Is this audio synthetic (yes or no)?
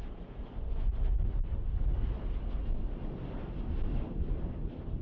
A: no